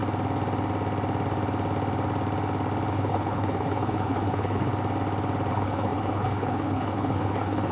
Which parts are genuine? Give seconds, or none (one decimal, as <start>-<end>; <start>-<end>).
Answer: 0.0-2.9; 4.7-5.5